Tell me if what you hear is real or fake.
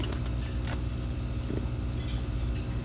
real